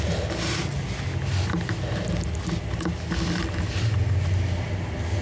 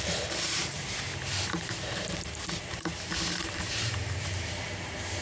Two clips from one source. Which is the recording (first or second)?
first